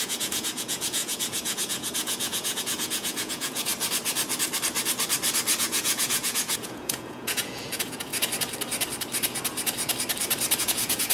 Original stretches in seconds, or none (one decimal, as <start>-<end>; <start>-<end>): 3.7-5.6; 8.1-10.6